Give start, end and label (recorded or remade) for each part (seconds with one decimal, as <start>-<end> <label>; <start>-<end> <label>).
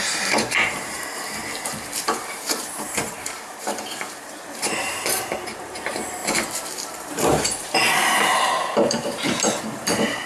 0.0-1.4 remade; 1.4-2.0 recorded; 2.0-6.2 remade; 6.2-6.9 recorded; 6.9-10.3 remade